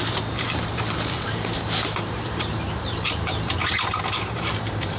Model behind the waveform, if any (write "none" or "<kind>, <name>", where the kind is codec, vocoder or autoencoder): vocoder, BigVGAN v2